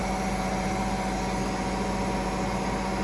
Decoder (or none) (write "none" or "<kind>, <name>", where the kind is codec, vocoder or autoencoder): none